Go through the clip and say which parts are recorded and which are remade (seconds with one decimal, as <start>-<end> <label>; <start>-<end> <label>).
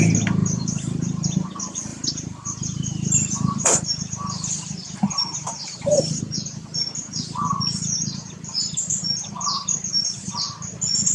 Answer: 0.0-0.4 recorded; 0.4-1.3 remade; 1.3-1.9 recorded; 1.9-6.2 remade; 6.2-8.9 recorded; 8.9-10.3 remade; 10.3-11.1 recorded